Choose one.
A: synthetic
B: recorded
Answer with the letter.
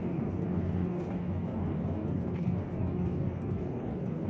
A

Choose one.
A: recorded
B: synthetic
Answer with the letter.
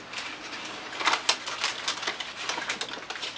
A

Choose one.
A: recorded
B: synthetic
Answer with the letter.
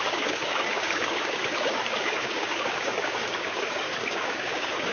B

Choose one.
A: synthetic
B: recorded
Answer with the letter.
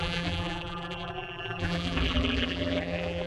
A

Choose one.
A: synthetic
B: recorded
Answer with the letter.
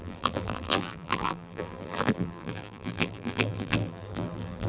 A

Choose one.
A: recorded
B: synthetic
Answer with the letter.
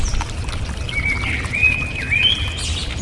A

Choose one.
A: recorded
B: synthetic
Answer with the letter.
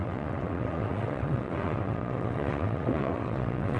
B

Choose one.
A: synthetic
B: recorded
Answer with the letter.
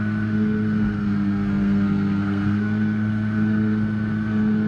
A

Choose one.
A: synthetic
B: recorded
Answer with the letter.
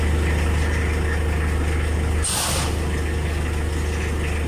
B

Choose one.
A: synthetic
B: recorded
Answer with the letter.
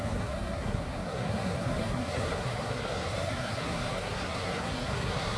A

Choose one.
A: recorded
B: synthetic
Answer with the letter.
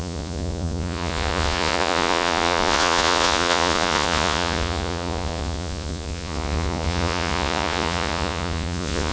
B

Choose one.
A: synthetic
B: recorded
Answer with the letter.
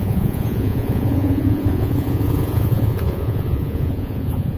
A